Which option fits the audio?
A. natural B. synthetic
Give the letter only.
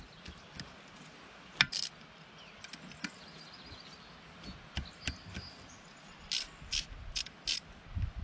A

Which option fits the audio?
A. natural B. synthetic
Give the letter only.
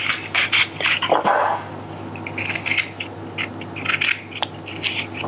A